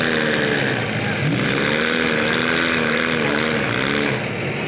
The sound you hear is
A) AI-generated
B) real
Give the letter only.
B